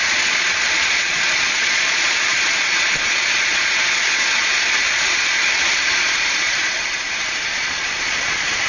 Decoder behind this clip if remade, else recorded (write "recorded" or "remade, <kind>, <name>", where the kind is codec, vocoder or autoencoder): remade, vocoder, Vocos